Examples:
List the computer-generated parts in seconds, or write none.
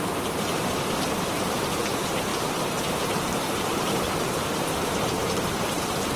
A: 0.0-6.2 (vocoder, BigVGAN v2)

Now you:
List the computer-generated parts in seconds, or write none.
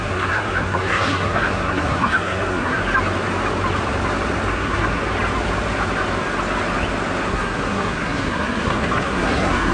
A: 0.0-2.8 (codec, SNAC); 4.5-5.0; 7.3-9.7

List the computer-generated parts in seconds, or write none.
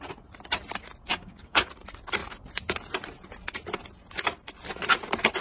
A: 1.1-1.7 (codec, DAC)